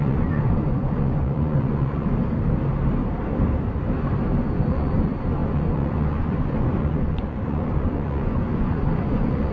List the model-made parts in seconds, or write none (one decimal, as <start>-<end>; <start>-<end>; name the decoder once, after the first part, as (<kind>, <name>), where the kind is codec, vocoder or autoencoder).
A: 0.0-2.1 (vocoder, Vocos); 4.4-9.5